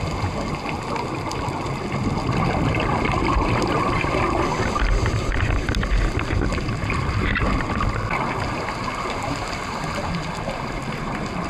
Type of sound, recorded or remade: recorded